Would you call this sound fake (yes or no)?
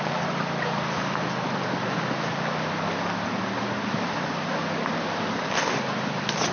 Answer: no